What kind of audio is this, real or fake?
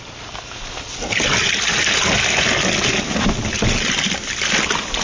real